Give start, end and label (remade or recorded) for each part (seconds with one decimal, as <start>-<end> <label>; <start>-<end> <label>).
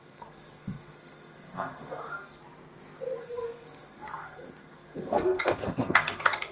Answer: 0.0-2.4 remade; 2.4-3.2 recorded; 3.2-6.5 remade